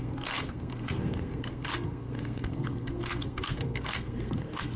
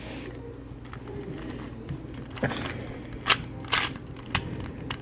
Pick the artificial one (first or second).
first